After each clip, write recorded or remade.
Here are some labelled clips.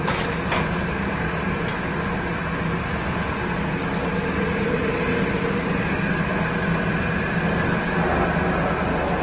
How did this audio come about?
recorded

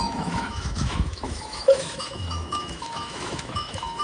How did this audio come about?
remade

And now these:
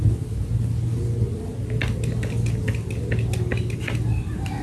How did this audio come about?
recorded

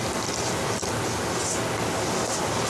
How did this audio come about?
recorded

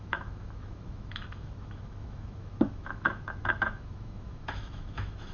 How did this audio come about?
remade